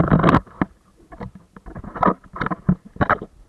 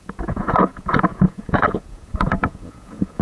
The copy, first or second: second